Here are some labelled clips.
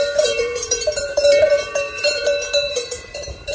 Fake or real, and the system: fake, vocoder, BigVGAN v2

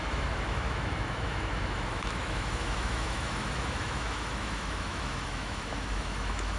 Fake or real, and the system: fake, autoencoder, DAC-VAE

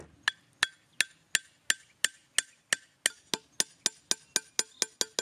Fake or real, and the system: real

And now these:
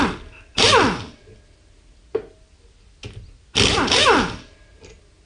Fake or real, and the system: real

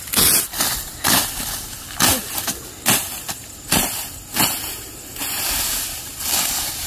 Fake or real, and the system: real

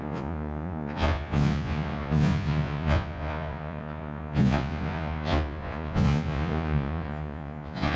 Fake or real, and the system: fake, vocoder, Vocos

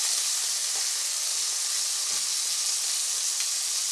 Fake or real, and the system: real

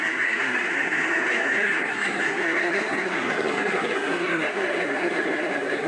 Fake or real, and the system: fake, codec, SNAC